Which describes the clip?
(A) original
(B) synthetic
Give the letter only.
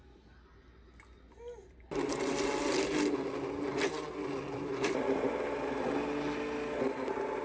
A